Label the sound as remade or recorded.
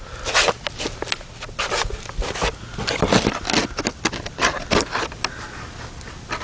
recorded